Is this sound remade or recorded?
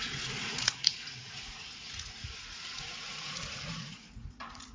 remade